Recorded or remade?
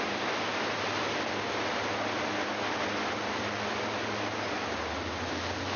recorded